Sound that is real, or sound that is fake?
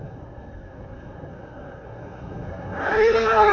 fake